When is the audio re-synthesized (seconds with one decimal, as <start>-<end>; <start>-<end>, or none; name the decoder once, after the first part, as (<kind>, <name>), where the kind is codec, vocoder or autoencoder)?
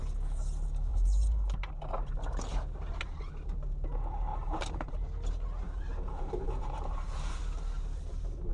0.9-2.4 (vocoder, BigVGAN v2); 4.3-4.9; 6.1-7.4